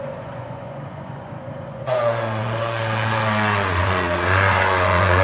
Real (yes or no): no